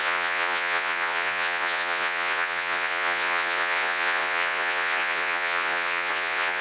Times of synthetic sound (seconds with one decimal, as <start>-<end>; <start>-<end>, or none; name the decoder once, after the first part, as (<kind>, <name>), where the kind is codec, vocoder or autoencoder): 0.0-6.6 (vocoder, Vocos)